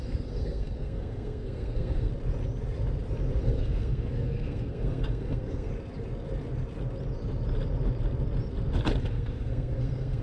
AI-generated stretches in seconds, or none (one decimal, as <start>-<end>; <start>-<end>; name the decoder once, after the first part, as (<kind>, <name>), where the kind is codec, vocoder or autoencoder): 0.0-2.1 (codec, SNAC); 3.4-5.7; 9.0-10.2